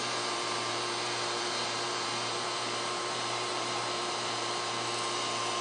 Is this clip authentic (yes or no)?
no